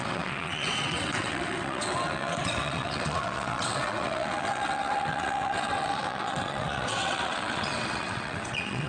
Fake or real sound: fake